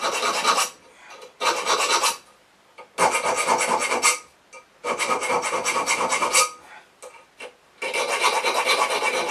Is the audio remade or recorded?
recorded